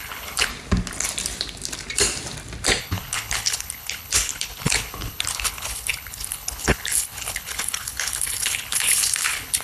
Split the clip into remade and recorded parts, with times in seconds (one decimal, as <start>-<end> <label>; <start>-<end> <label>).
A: 0.0-0.5 remade; 0.5-2.8 recorded; 2.8-9.6 remade